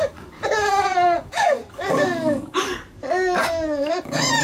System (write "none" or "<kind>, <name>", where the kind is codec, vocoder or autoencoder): codec, DAC